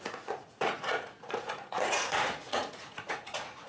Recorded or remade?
remade